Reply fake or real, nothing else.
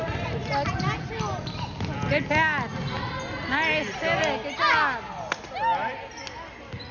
real